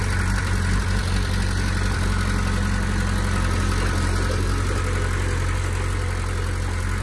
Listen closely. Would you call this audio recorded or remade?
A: recorded